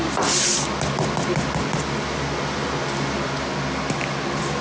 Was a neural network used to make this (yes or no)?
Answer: no